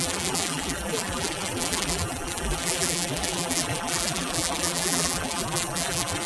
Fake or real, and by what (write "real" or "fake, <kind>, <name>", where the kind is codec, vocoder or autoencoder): fake, vocoder, BigVGAN v2